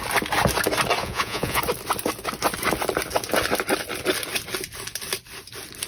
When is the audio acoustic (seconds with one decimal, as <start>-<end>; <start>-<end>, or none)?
0.0-1.0; 1.6-5.9